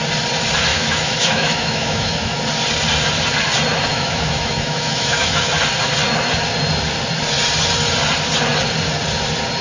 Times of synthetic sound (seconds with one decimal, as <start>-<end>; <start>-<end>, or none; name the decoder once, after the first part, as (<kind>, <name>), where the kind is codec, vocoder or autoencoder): 0.7-2.4 (autoencoder, DAC-VAE); 3.9-5.5